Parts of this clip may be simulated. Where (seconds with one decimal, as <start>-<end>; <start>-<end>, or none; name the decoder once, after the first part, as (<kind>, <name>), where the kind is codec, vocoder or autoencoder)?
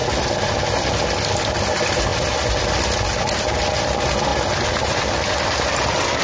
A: none